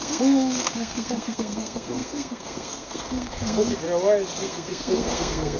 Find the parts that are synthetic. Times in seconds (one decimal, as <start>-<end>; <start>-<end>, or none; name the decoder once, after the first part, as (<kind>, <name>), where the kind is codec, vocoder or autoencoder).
0.0-3.8 (codec, SNAC); 4.4-5.6